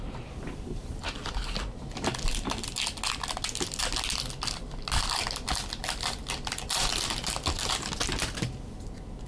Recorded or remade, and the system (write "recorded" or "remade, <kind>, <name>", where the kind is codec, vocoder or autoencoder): recorded